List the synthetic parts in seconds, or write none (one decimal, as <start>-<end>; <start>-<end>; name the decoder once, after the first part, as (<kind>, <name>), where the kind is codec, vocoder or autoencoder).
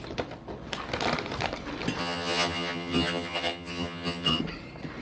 2.0-4.4 (vocoder, HiFi-GAN)